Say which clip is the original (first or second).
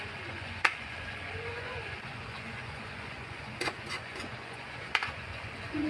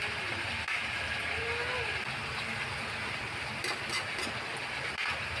second